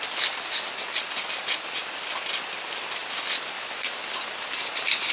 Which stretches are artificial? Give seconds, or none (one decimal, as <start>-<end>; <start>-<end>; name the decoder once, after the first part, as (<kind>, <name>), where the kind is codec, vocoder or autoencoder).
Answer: none